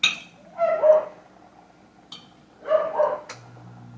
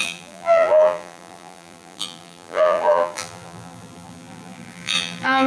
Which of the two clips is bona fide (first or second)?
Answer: first